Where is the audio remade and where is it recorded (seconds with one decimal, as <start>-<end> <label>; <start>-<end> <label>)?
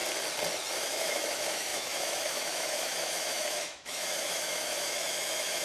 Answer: 0.0-0.7 recorded; 0.7-5.6 remade